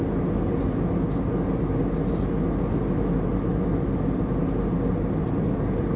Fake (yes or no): no